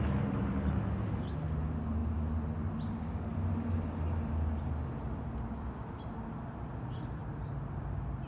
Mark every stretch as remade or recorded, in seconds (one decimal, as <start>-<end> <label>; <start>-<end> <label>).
0.0-8.3 recorded